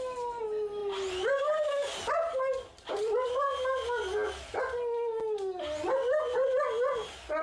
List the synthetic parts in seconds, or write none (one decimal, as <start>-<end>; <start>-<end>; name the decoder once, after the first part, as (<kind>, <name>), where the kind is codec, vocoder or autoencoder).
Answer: none